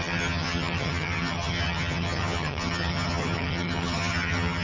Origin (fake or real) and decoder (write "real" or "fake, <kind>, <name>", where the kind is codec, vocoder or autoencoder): fake, vocoder, HiFi-GAN